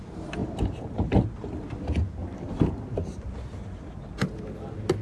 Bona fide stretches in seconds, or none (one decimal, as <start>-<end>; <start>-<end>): 0.0-0.4; 1.1-2.2; 4.0-5.0